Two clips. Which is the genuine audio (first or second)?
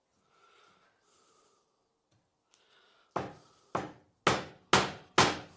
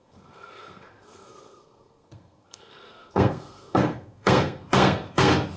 first